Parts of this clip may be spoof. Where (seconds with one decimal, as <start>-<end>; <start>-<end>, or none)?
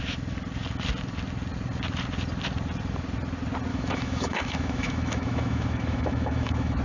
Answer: 3.7-6.8